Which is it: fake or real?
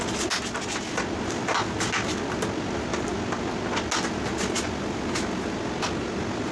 real